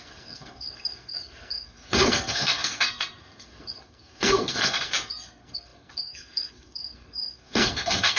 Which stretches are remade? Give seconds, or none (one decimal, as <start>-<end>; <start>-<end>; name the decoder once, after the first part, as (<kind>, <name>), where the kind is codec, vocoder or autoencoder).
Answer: 0.0-8.2 (codec, SNAC)